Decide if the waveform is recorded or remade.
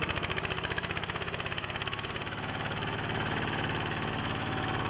remade